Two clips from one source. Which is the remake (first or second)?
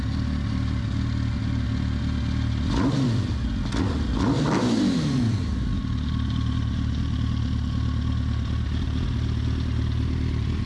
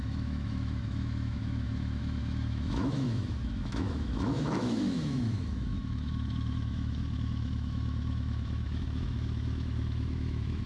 second